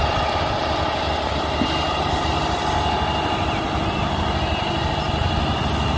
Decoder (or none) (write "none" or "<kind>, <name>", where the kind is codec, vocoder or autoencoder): none